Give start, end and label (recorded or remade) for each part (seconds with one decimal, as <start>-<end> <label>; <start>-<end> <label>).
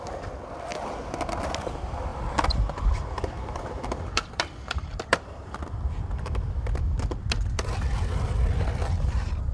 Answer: 0.0-0.7 remade; 0.7-1.4 recorded; 1.4-9.5 remade